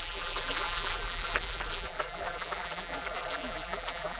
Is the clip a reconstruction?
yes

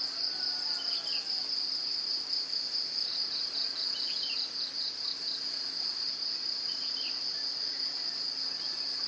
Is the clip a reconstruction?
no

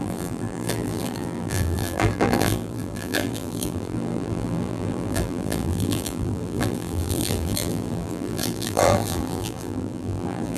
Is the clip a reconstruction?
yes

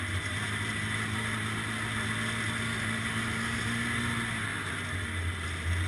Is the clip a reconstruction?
no